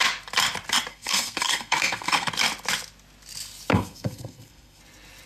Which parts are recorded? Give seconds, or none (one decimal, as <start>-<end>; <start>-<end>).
0.0-0.9; 2.3-3.7; 4.8-5.3